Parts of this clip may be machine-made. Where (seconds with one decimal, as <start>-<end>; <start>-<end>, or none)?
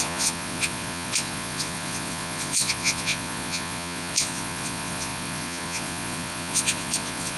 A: 0.0-7.4